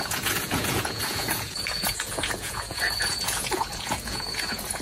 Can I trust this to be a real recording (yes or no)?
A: no